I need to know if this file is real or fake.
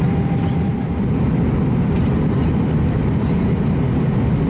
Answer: real